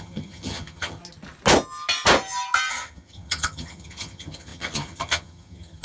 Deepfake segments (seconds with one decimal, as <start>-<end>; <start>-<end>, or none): 0.0-1.0; 2.7-5.8